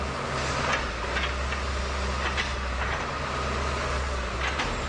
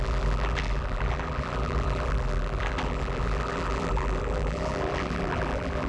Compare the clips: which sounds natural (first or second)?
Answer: first